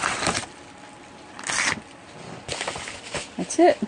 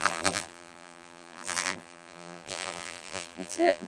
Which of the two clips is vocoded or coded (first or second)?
second